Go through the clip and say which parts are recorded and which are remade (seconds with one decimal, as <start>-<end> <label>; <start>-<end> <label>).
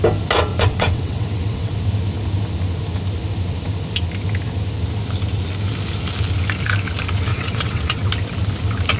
0.0-0.5 recorded; 0.5-1.7 remade; 1.7-7.3 recorded; 7.3-8.1 remade; 8.1-9.0 recorded